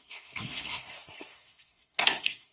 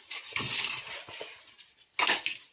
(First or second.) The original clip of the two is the second